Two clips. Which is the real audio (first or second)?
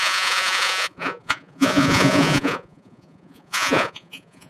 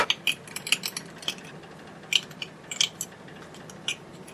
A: second